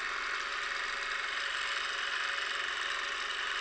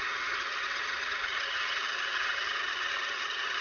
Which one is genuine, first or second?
first